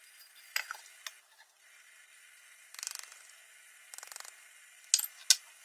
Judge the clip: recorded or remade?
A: recorded